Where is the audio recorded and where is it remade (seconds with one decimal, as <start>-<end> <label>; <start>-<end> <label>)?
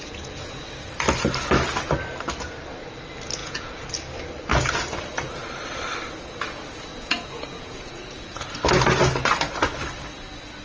0.0-0.6 remade; 0.6-3.4 recorded; 3.4-3.9 remade; 3.9-6.9 recorded; 6.9-8.5 remade; 8.5-10.6 recorded